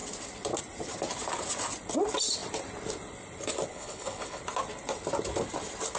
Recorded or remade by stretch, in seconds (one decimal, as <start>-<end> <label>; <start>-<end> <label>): 0.0-3.7 recorded; 3.7-4.4 remade; 4.4-6.0 recorded